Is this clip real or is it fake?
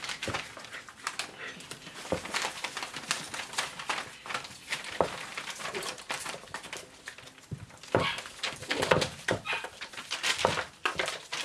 real